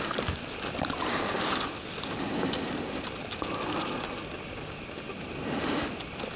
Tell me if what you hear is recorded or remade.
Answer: recorded